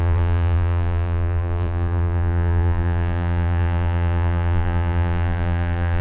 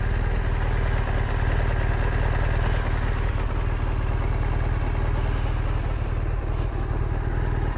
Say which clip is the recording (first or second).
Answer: second